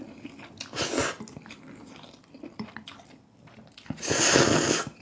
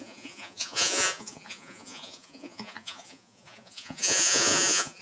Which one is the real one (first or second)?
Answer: first